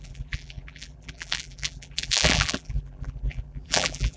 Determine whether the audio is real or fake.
fake